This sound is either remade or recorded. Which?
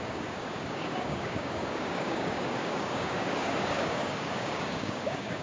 remade